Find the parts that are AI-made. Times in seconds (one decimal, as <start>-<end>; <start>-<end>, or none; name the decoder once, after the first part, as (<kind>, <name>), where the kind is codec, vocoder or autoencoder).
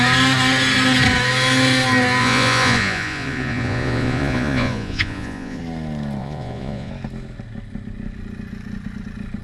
2.2-5.6 (vocoder, Vocos); 6.2-6.9